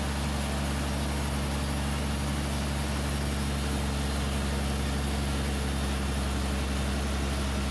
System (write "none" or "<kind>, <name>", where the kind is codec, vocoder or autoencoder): none